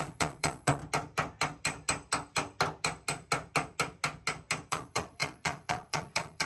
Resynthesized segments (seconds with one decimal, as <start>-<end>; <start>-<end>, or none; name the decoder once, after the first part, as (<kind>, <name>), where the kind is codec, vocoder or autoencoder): 0.0-0.8 (vocoder, Vocos); 4.7-6.5